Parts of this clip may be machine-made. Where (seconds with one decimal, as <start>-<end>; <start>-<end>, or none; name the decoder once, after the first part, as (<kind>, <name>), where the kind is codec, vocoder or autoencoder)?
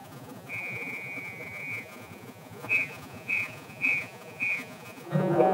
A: 0.0-5.5 (vocoder, Vocos)